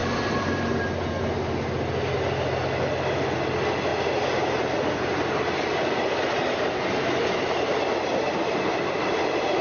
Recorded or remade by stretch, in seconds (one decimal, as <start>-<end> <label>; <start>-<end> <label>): 0.0-0.8 remade; 0.8-3.9 recorded; 3.9-5.4 remade; 5.4-9.6 recorded